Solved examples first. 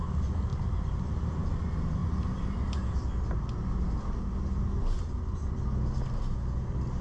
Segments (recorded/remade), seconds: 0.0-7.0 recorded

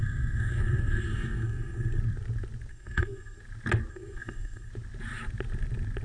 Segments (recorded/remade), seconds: 0.0-2.0 remade; 2.0-2.7 recorded; 2.7-3.4 remade; 3.4-3.9 recorded; 3.9-4.7 remade; 4.7-6.0 recorded